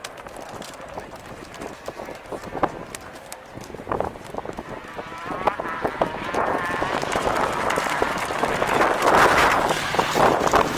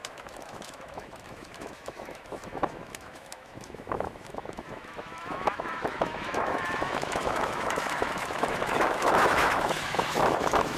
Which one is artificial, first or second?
second